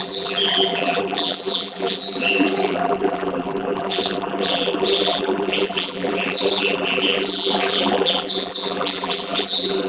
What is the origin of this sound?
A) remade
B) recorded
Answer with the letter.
A